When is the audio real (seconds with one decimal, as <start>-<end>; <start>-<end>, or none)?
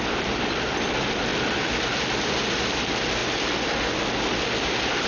0.0-5.1